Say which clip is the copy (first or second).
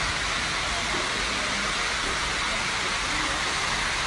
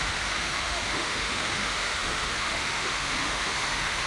second